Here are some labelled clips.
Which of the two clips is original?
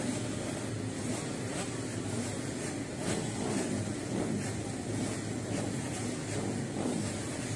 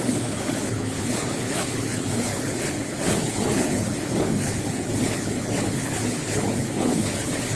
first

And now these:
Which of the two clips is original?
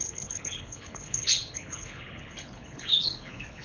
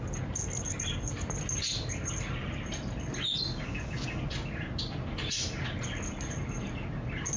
second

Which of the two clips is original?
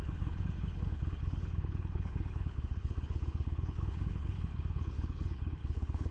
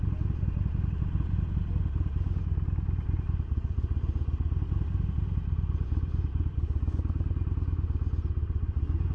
second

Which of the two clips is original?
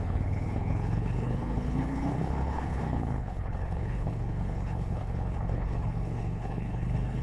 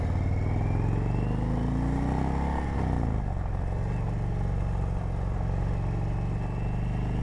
second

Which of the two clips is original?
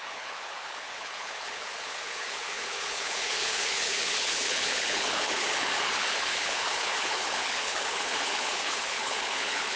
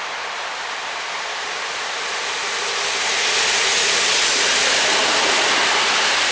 second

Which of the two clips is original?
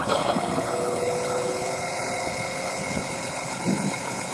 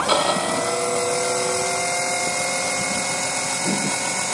second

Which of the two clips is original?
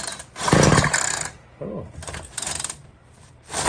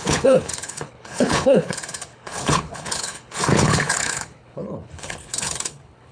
first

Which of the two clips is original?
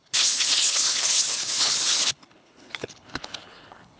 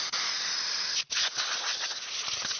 second